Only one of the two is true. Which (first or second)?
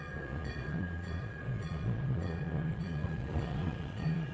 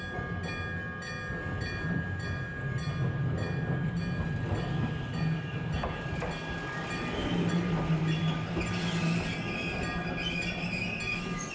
second